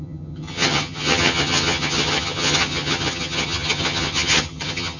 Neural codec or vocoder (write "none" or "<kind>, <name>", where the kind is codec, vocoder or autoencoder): vocoder, HiFi-GAN